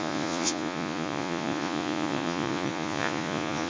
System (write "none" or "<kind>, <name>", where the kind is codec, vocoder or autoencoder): vocoder, Vocos